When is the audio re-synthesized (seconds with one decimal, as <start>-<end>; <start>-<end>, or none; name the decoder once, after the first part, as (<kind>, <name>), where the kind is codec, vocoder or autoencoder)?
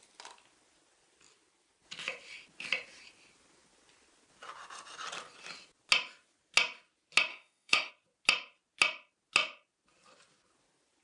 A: 7.3-7.9 (autoencoder, DAC-VAE)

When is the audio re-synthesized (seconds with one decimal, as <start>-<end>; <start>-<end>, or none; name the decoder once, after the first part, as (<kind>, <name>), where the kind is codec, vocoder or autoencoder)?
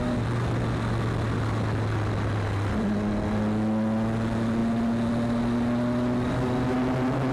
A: none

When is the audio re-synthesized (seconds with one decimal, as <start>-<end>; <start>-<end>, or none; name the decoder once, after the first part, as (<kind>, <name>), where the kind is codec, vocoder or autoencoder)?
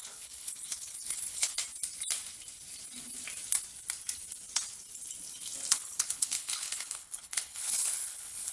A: 0.0-1.6 (codec, HILCodec); 5.7-8.5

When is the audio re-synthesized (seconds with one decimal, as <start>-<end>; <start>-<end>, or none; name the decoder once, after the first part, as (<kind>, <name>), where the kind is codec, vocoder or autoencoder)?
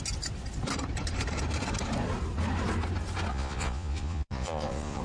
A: 3.3-5.0 (vocoder, Vocos)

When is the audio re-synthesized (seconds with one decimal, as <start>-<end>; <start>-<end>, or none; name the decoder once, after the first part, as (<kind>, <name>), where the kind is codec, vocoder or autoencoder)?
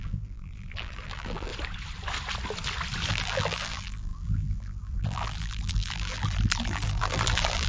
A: 0.0-1.5 (vocoder, BigVGAN v2); 3.1-7.7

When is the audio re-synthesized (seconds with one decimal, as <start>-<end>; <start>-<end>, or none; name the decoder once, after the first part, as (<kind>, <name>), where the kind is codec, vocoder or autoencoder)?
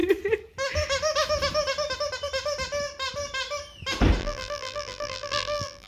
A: 4.2-5.9 (vocoder, BigVGAN v2)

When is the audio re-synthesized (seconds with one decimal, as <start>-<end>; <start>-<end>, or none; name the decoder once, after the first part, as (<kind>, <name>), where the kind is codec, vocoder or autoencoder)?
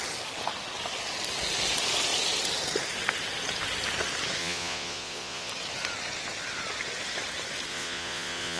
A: 4.4-5.5 (vocoder, Vocos); 7.7-8.6